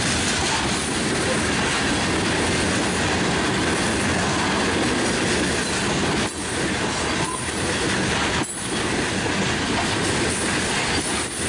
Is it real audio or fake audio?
real